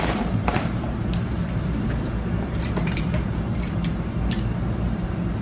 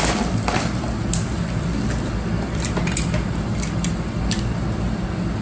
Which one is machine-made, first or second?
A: first